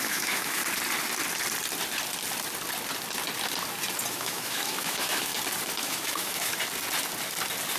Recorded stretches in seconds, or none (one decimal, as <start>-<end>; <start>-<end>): 0.6-4.1; 5.3-5.8; 6.5-7.8